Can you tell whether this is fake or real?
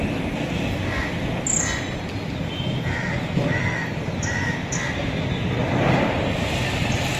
real